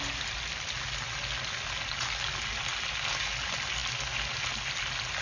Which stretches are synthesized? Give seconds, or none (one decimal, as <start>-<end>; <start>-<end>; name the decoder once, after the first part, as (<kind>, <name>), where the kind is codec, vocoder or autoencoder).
none